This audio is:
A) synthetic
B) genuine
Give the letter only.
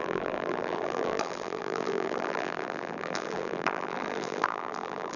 A